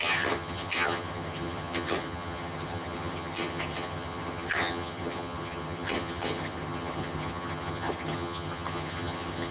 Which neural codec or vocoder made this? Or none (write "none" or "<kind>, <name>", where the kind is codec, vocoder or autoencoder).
vocoder, HiFi-GAN